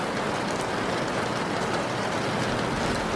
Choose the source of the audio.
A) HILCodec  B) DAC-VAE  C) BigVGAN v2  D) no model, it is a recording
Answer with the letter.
D